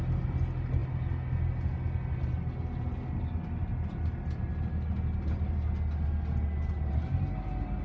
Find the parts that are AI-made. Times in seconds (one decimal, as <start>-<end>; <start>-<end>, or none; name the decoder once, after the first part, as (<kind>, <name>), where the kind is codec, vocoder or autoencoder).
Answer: none